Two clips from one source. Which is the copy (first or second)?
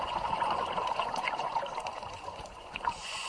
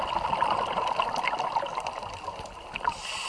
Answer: first